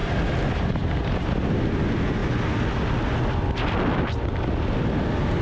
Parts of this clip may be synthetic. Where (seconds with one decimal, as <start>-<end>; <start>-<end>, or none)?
none